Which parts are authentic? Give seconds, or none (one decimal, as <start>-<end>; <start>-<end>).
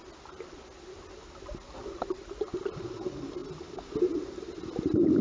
0.0-1.8; 2.7-5.2